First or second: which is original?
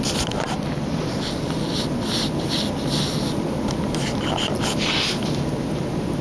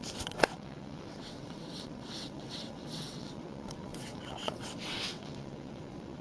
first